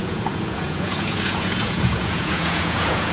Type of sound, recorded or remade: remade